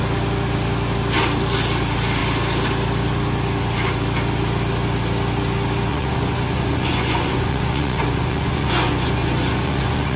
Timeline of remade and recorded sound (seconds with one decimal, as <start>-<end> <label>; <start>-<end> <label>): 0.0-5.9 recorded; 5.9-10.2 remade

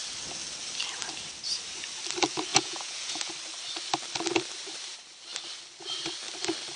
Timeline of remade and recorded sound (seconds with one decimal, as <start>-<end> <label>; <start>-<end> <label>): 0.0-2.5 recorded; 2.5-3.3 remade; 3.3-6.8 recorded